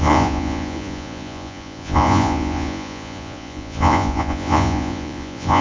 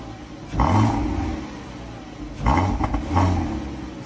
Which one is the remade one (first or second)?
first